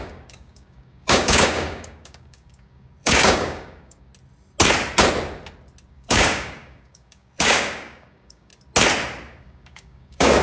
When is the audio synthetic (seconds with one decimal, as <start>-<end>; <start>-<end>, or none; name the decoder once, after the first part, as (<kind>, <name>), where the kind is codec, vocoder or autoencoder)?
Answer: 0.0-4.1 (codec, DAC); 5.9-8.5; 9.4-10.4